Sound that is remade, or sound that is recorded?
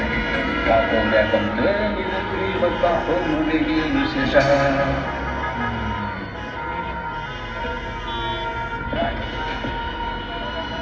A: recorded